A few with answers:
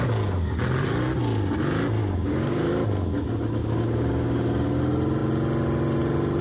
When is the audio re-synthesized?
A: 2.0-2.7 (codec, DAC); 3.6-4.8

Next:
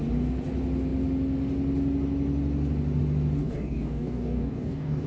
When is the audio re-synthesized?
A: 3.4-5.1 (codec, DAC)

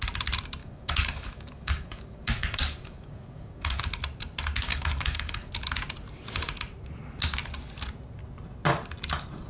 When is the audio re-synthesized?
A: 0.6-3.8 (codec, DAC); 4.7-5.5

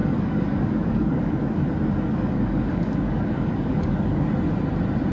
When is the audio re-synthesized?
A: 0.0-1.6 (codec, DAC); 2.1-4.3